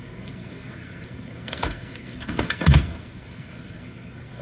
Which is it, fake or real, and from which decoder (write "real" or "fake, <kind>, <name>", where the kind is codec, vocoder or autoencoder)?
fake, codec, SNAC